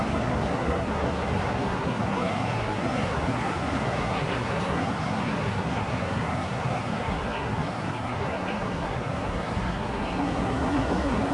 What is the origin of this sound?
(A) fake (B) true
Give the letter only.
A